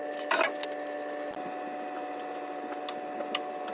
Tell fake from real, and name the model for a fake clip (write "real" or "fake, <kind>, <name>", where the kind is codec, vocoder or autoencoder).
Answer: real